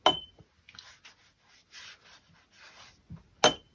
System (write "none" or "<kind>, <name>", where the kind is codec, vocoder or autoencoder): none